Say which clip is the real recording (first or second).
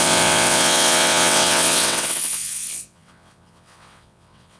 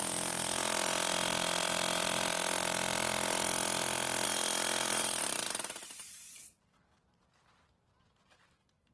second